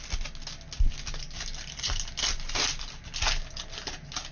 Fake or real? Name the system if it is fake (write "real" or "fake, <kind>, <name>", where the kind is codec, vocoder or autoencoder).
real